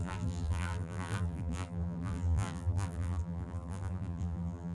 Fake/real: fake